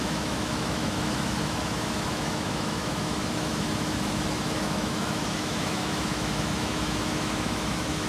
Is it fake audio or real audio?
fake